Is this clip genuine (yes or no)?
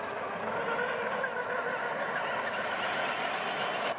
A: yes